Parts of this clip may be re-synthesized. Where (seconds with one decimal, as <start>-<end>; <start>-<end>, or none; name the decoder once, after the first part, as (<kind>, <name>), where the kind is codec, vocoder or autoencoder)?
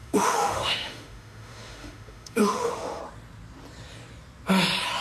0.0-3.0 (autoencoder, DAC-VAE)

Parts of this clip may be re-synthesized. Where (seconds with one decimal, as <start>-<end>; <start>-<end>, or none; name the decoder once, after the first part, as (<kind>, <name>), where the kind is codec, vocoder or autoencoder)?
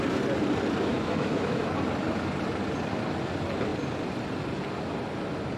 0.9-1.6 (autoencoder, DAC-VAE)